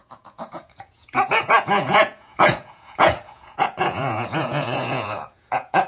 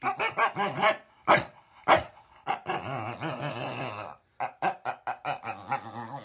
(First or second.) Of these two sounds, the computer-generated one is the first